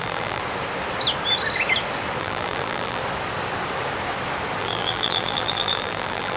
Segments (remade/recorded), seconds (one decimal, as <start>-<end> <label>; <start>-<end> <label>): 0.0-0.4 remade; 0.4-2.2 recorded; 2.2-3.0 remade; 3.0-4.6 recorded; 4.6-6.4 remade